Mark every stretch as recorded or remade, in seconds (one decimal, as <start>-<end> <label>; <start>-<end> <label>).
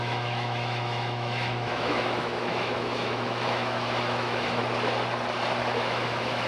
0.0-4.6 remade; 4.6-5.6 recorded; 5.6-6.5 remade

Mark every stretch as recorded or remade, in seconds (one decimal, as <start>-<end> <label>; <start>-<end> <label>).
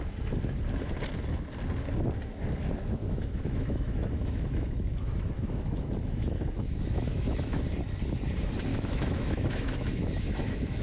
0.0-3.0 recorded; 3.0-7.6 remade; 7.6-8.7 recorded; 8.7-10.8 remade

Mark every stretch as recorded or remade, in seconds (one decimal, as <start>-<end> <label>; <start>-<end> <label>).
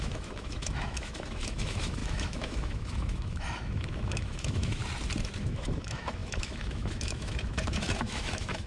0.0-4.8 remade; 4.8-5.4 recorded; 5.4-8.7 remade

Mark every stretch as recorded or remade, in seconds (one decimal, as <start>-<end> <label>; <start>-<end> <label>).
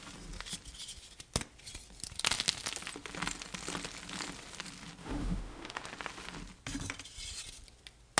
0.0-5.0 recorded; 5.0-5.8 remade; 5.8-8.2 recorded